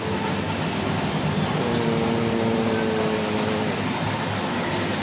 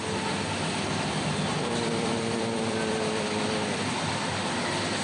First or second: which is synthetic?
second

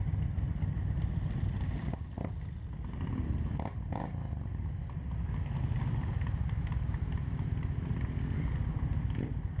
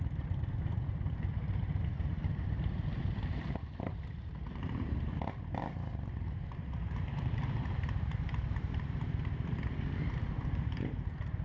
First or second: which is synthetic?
second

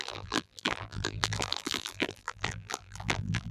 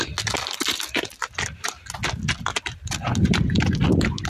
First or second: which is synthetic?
first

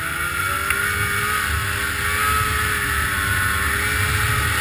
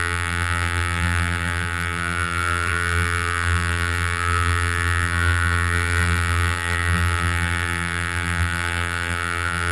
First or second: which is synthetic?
second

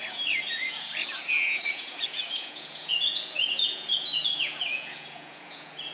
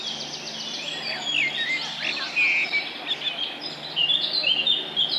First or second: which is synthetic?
first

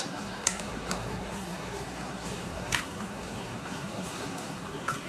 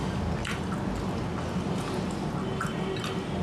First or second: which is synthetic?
first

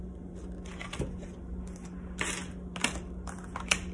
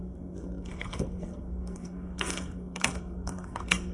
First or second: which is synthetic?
second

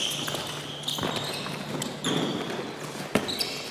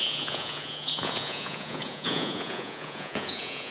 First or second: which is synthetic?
second